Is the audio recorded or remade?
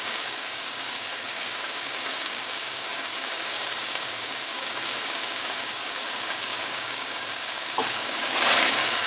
remade